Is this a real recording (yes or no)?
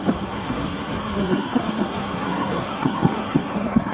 no